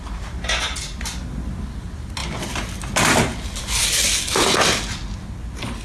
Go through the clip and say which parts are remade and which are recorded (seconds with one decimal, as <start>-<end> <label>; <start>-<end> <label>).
0.0-5.8 recorded